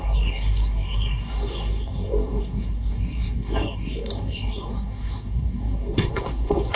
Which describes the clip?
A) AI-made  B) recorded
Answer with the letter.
A